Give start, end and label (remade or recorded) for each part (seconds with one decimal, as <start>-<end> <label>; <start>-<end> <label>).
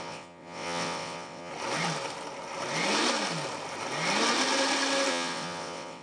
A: 0.0-1.5 remade; 1.5-5.1 recorded; 5.1-6.0 remade